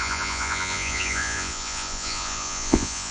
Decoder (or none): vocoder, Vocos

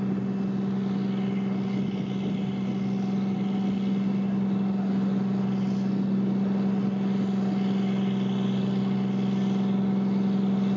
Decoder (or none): none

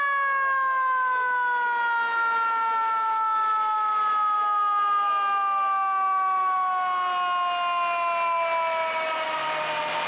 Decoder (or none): none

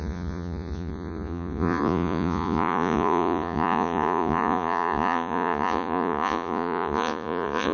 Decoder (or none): vocoder, Vocos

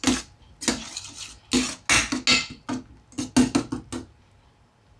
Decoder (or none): none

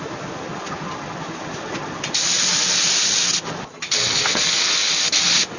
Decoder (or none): none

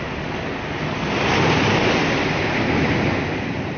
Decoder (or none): none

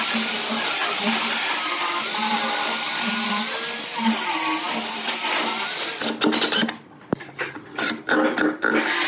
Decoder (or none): none